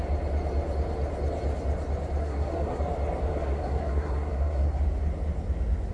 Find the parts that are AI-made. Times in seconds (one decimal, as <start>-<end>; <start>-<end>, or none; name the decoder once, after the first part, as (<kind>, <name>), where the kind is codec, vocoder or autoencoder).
2.2-2.8 (codec, SNAC); 3.3-4.8